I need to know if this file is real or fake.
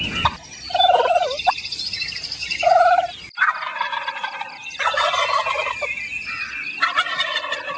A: real